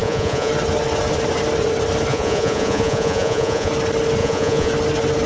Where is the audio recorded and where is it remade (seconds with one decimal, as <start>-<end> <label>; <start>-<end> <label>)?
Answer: 0.0-0.5 remade; 0.5-2.1 recorded; 2.1-3.7 remade; 3.7-4.2 recorded; 4.2-4.7 remade; 4.7-5.3 recorded